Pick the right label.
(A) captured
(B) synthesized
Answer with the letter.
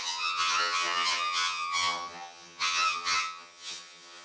B